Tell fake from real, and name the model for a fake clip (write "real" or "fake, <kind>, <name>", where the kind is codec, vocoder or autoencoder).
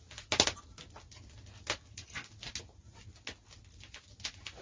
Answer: real